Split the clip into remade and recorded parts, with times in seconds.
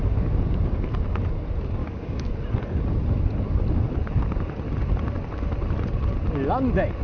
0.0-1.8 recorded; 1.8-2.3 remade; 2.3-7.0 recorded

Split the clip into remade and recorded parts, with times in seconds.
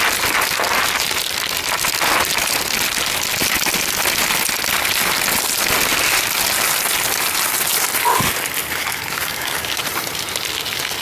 0.0-8.8 recorded; 8.8-9.8 remade; 9.8-11.0 recorded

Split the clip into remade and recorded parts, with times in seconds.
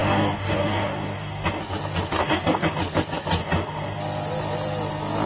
0.0-1.6 remade; 1.6-2.2 recorded; 2.2-2.8 remade; 2.8-3.4 recorded; 3.4-4.0 remade; 4.0-5.3 recorded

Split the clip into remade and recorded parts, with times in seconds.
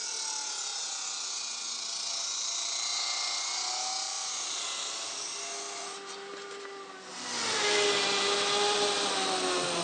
0.0-9.8 recorded